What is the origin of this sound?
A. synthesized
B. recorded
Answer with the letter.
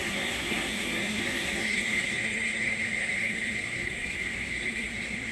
A